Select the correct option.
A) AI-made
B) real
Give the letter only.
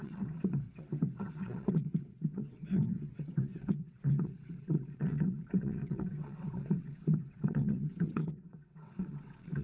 A